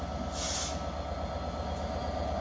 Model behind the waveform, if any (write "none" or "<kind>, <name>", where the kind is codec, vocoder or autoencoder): none